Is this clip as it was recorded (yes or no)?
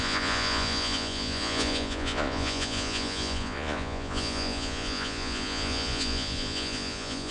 no